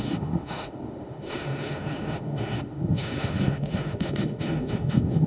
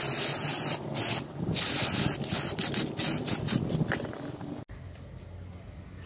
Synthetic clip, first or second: first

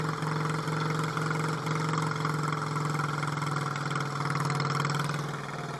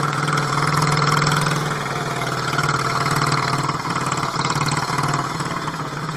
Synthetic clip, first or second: second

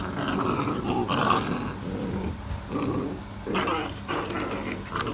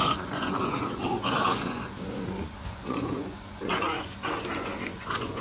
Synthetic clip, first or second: second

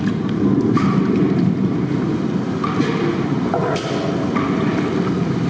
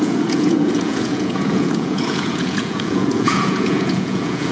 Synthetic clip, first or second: second